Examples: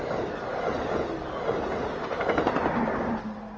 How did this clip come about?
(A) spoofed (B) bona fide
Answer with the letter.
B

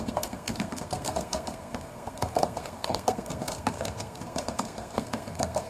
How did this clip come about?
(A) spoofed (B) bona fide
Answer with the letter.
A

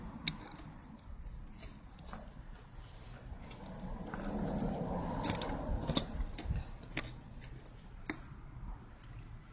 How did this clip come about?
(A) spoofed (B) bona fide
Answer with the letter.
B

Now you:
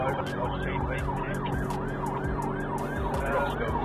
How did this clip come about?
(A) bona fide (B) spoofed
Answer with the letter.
A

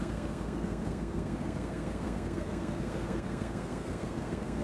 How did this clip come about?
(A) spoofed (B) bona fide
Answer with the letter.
A